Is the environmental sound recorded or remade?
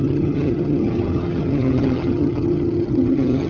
remade